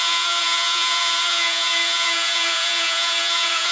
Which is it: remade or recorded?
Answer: remade